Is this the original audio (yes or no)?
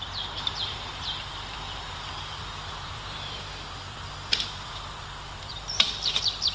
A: no